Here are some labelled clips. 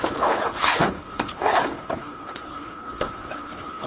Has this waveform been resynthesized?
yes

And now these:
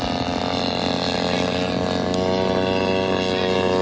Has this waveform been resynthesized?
no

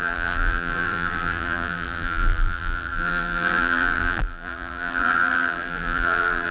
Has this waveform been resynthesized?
yes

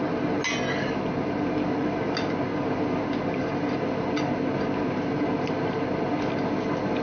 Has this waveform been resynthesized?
no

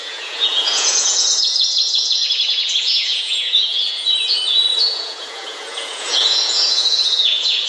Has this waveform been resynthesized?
yes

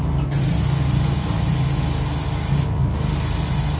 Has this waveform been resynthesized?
no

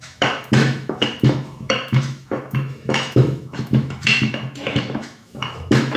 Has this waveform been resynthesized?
yes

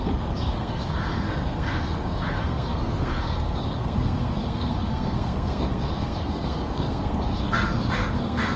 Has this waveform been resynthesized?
yes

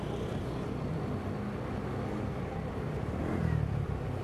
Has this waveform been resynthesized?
no